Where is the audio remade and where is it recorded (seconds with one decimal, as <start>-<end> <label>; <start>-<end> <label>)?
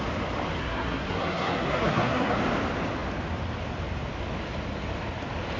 0.0-0.6 recorded; 0.6-2.4 remade; 2.4-5.6 recorded